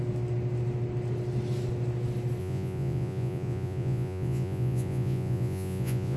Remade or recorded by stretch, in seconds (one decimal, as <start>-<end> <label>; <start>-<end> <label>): 0.0-2.4 recorded; 2.4-6.2 remade